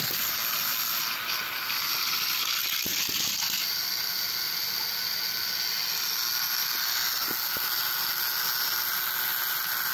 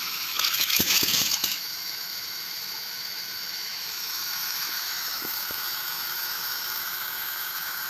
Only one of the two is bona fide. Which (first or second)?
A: first